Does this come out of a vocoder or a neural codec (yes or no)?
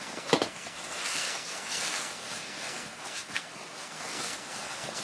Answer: yes